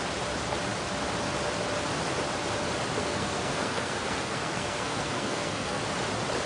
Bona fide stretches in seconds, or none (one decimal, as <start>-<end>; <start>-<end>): 0.0-3.0; 5.8-6.5